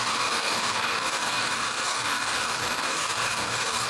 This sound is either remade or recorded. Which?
remade